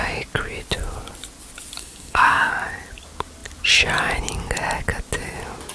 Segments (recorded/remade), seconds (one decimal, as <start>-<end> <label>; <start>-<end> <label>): 0.0-1.8 recorded; 1.8-2.5 remade; 2.5-5.7 recorded